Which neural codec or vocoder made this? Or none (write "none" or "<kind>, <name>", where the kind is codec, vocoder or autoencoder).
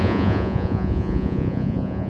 vocoder, Vocos